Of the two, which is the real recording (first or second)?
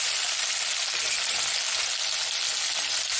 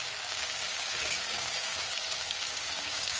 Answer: first